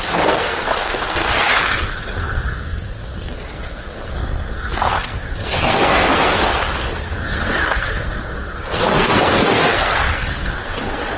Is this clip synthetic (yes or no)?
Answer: yes